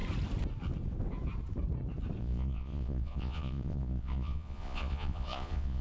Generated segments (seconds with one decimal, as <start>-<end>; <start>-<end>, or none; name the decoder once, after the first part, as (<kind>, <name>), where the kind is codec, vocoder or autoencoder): 2.2-5.8 (vocoder, Vocos)